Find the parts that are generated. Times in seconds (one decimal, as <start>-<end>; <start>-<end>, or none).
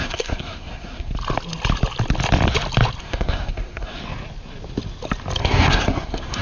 0.0-1.1; 3.0-4.0; 5.4-6.4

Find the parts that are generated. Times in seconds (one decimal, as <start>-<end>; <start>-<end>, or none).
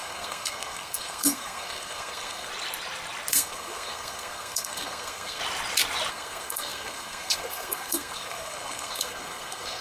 0.0-2.5; 3.3-5.4; 6.1-9.8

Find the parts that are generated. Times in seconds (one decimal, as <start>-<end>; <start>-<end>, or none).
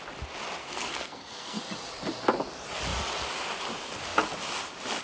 0.6-1.6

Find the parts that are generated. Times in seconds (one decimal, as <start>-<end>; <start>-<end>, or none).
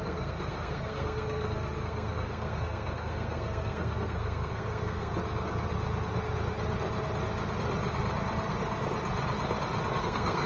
0.0-5.1; 10.0-10.5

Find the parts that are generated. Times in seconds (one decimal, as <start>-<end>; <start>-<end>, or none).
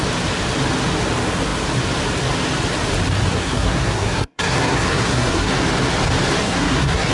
3.3-5.5; 6.4-7.1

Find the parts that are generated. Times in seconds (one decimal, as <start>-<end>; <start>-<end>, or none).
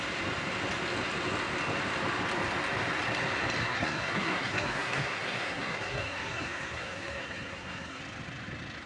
3.6-8.0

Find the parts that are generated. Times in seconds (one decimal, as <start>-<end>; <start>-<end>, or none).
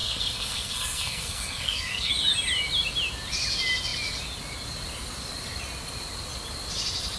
0.0-2.1